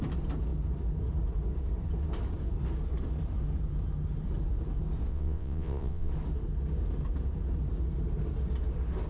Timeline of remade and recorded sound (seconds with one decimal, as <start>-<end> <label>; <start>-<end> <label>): 0.0-5.1 recorded; 5.1-6.1 remade; 6.1-9.1 recorded